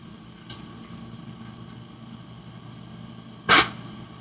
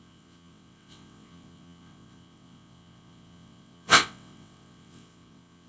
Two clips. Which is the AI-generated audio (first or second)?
second